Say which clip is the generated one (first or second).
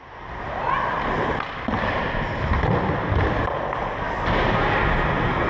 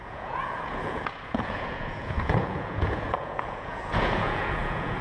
second